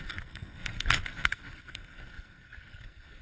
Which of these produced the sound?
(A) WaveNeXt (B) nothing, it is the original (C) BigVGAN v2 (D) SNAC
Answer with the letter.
D